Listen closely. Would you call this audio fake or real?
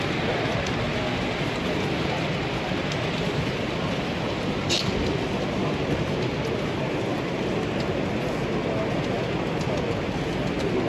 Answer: real